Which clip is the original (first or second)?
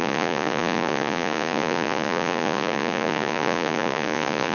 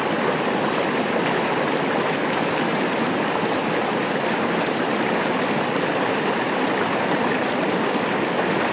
second